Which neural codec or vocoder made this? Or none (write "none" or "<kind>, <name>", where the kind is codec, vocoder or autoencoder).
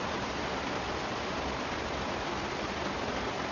none